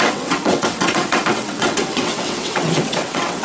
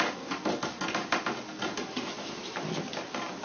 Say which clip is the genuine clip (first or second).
second